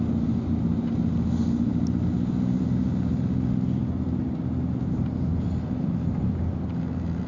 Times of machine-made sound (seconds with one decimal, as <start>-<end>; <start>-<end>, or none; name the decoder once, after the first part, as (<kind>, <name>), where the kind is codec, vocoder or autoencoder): none